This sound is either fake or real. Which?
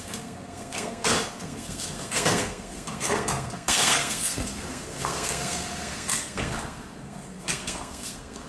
fake